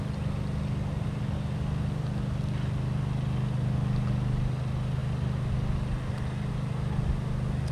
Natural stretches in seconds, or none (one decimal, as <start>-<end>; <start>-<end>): 0.0-7.7